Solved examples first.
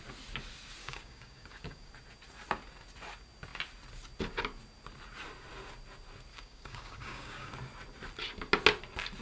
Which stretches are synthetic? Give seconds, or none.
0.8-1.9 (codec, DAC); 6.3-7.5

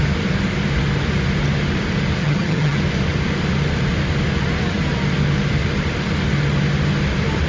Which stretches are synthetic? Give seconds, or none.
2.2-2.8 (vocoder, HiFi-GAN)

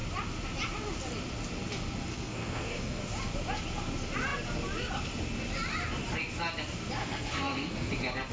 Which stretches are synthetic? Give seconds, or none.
2.1-3.0 (codec, SNAC); 7.0-7.9

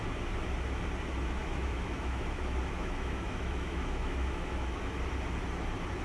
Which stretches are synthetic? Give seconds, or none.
1.4-4.8 (autoencoder, DAC-VAE)

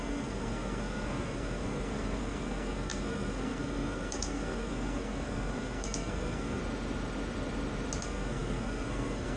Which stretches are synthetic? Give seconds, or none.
0.0-6.6 (codec, SNAC); 8.0-9.4

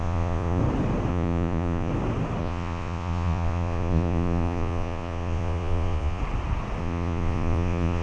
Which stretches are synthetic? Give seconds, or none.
0.0-0.6 (vocoder, Vocos); 1.1-1.9; 2.4-6.2; 6.8-8.0

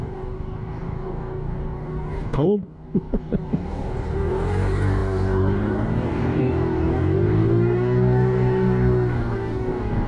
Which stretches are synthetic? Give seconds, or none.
0.0-10.1 (codec, DAC)

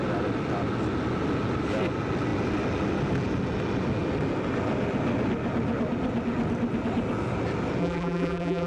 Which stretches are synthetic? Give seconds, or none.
7.8-8.7 (vocoder, BigVGAN v2)